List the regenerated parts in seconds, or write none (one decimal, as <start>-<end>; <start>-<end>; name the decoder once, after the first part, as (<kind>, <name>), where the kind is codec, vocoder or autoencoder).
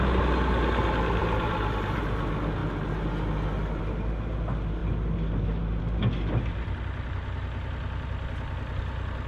1.2-2.0 (vocoder, BigVGAN v2)